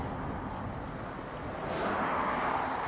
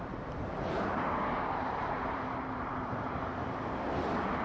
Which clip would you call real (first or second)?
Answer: first